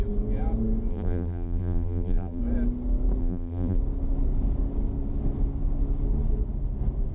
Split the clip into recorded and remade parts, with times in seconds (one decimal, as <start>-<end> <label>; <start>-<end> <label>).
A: 0.0-0.9 recorded; 0.9-2.4 remade; 2.4-3.2 recorded; 3.2-3.8 remade; 3.8-7.1 recorded